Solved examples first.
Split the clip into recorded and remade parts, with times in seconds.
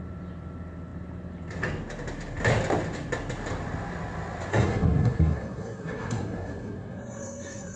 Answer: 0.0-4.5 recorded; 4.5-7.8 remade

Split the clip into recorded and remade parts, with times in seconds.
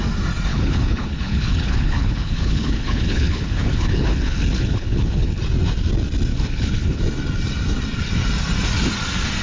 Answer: 0.0-0.5 recorded; 0.5-5.4 remade; 5.4-6.3 recorded; 6.3-7.0 remade; 7.0-9.4 recorded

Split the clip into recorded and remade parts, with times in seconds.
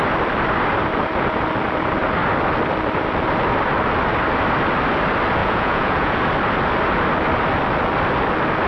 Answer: 0.0-5.4 recorded; 5.4-6.2 remade; 6.2-8.7 recorded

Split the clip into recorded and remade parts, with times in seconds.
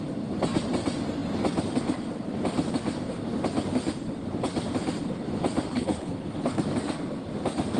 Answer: 0.0-5.7 recorded; 5.7-6.6 remade; 6.6-7.8 recorded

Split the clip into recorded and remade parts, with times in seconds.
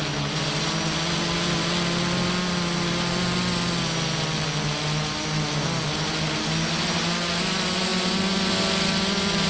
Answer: 0.0-9.5 recorded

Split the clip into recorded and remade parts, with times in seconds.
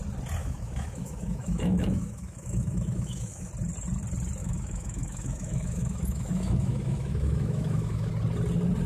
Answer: 0.0-0.4 recorded; 0.4-3.5 remade; 3.5-4.4 recorded; 4.4-8.1 remade; 8.1-8.9 recorded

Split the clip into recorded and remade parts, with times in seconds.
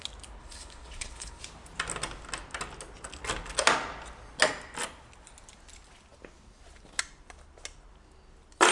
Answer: 0.0-0.4 recorded; 0.4-1.4 remade; 1.4-8.7 recorded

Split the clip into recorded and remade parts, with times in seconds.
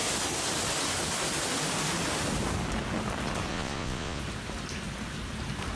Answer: 0.0-3.5 recorded; 3.5-4.2 remade; 4.2-5.8 recorded